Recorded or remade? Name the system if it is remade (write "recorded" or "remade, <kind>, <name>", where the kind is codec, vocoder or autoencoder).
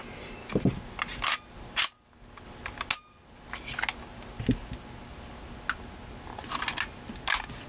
recorded